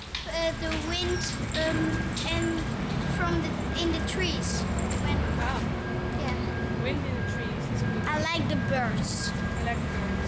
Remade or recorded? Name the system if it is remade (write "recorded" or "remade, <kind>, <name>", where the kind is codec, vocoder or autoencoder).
recorded